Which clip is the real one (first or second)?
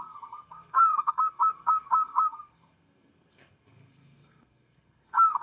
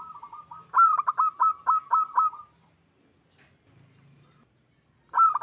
second